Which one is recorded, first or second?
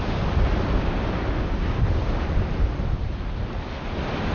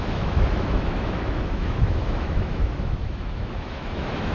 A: first